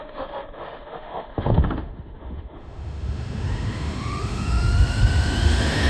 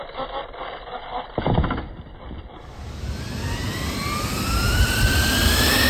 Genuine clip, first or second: second